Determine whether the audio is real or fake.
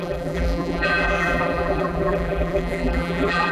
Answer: fake